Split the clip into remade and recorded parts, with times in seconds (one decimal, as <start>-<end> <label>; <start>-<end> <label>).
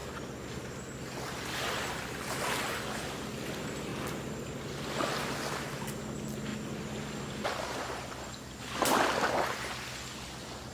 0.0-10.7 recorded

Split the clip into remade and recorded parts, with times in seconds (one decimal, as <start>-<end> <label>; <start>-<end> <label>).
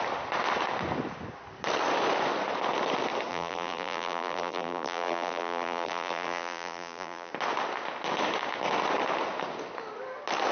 0.0-3.3 recorded; 3.3-7.3 remade; 7.3-10.5 recorded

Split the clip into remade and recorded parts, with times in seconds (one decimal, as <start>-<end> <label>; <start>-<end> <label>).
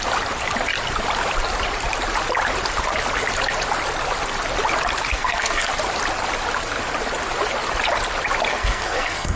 0.0-5.1 recorded; 5.1-5.7 remade; 5.7-8.5 recorded; 8.5-9.4 remade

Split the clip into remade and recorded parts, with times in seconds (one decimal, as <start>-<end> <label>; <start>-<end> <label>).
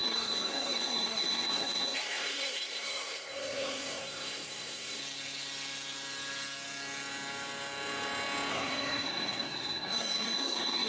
0.0-5.0 remade; 5.0-8.5 recorded; 8.5-10.9 remade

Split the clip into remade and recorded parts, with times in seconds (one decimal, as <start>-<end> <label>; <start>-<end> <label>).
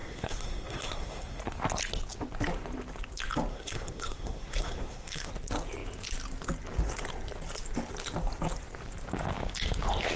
0.0-1.4 remade; 1.4-3.5 recorded; 3.5-5.3 remade; 5.3-10.2 recorded